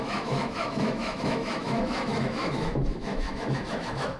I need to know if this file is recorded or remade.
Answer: remade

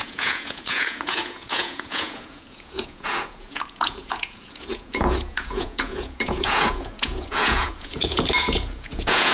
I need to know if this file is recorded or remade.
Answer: remade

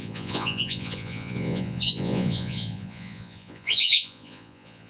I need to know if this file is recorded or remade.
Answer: remade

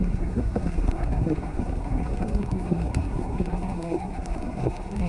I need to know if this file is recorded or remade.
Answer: remade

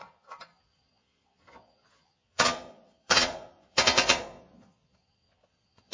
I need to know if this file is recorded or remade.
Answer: remade